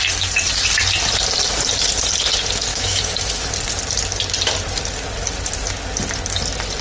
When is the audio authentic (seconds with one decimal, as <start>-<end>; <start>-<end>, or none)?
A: 0.0-2.7; 3.5-6.8